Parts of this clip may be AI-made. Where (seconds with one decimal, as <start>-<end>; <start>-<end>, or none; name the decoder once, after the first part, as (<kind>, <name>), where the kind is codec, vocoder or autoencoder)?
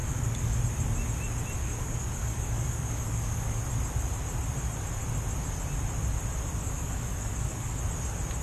0.0-0.6 (codec, DAC); 1.6-3.6; 6.6-7.8